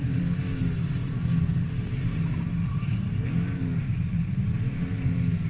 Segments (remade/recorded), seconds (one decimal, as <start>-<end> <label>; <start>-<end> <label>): 0.0-5.5 recorded